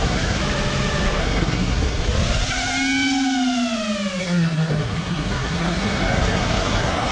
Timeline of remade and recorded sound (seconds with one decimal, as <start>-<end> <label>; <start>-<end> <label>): 0.0-0.4 remade; 0.4-1.2 recorded; 1.2-2.1 remade; 2.1-4.2 recorded; 4.2-7.1 remade